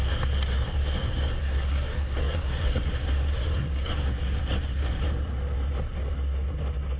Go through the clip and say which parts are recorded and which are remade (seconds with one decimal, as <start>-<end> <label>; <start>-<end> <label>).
0.0-1.4 recorded; 1.4-2.9 remade; 2.9-3.3 recorded; 3.3-3.9 remade; 3.9-7.0 recorded